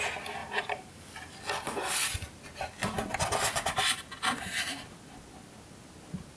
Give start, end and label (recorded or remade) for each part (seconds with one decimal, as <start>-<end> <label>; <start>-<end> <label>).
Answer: 0.0-0.4 recorded; 0.4-1.4 remade; 1.4-6.4 recorded